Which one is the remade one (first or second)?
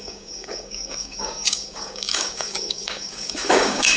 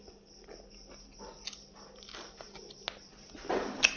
first